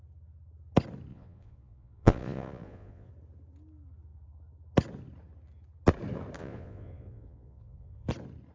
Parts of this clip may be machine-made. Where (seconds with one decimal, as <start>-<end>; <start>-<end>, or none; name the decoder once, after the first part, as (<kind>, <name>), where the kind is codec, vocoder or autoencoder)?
1.1-3.1 (vocoder, Vocos); 6.4-8.1

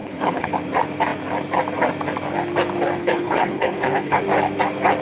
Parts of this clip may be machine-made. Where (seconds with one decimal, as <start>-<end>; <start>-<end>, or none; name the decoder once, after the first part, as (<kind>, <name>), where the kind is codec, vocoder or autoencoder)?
0.0-0.5 (codec, HILCodec); 3.0-4.2

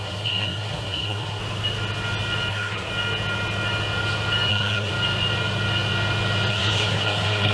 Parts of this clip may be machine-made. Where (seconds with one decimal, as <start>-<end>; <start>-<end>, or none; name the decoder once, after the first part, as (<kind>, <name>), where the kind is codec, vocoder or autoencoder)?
0.0-1.4 (codec, SNAC); 2.5-2.9; 4.5-4.9; 6.5-7.5